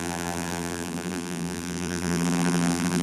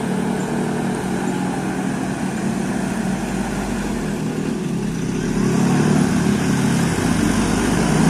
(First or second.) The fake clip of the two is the first